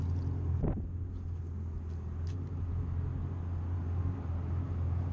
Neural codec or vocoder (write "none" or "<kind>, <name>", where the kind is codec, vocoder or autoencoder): none